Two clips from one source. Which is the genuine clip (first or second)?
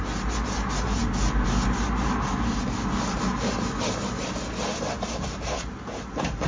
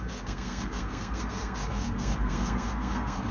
first